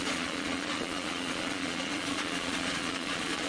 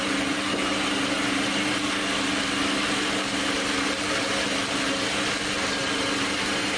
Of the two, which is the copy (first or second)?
first